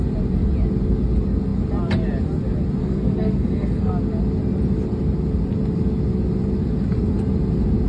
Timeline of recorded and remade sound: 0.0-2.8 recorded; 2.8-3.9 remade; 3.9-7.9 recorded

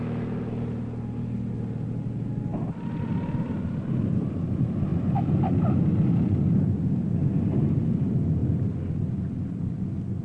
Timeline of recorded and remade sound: 0.0-10.2 recorded